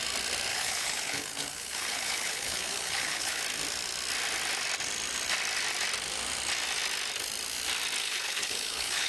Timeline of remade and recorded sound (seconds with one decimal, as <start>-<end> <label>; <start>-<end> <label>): 0.0-0.5 recorded; 0.5-3.4 remade; 3.4-8.0 recorded; 8.0-9.1 remade